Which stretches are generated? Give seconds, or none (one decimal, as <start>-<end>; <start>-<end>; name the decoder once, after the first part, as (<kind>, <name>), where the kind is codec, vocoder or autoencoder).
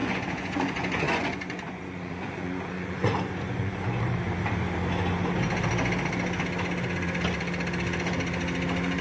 0.0-4.0 (vocoder, Vocos)